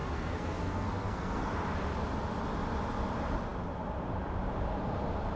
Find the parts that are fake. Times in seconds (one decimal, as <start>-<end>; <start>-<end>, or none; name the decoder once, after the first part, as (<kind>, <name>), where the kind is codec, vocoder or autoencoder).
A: 0.0-1.5 (codec, SNAC)